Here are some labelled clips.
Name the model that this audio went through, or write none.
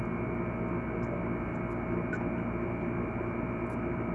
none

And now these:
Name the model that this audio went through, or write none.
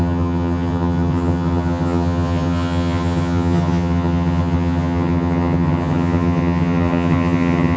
vocoder, HiFi-GAN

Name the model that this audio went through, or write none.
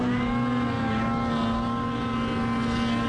none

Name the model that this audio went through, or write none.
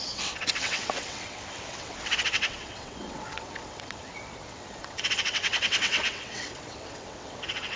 vocoder, WaveNeXt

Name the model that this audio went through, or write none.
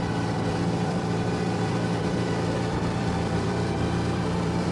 vocoder, BigVGAN v2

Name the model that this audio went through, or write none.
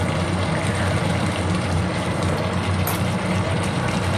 none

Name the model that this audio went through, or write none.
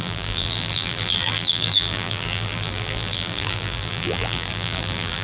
vocoder, BigVGAN v2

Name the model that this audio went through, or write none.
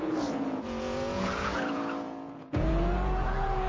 vocoder, Vocos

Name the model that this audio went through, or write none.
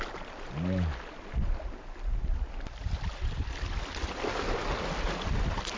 none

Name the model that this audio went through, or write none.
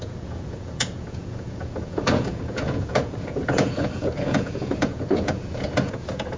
vocoder, Vocos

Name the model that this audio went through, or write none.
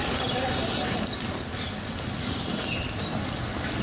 none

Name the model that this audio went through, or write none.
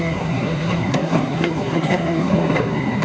codec, SNAC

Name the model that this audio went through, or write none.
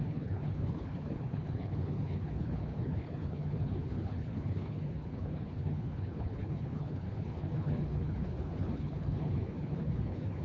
codec, HILCodec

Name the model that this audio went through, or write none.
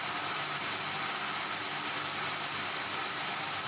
none